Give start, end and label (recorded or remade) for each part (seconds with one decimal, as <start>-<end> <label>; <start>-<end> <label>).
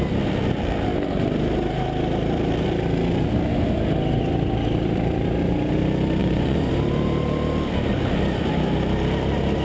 0.0-6.2 recorded; 6.2-6.7 remade; 6.7-9.6 recorded